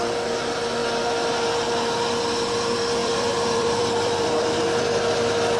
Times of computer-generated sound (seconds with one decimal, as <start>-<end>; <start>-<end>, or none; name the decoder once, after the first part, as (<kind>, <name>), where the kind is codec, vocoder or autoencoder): 3.0-4.8 (vocoder, BigVGAN v2)